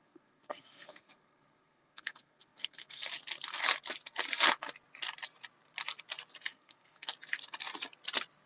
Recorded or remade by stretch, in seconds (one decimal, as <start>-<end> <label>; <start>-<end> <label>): 0.0-3.0 remade; 3.0-6.5 recorded; 6.5-7.1 remade; 7.1-8.5 recorded